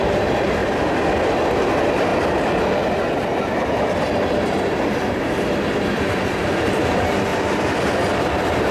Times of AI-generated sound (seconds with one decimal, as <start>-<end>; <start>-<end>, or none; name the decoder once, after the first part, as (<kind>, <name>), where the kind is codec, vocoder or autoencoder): 0.0-0.6 (vocoder, BigVGAN v2); 1.5-2.1; 4.9-7.3; 8.2-8.7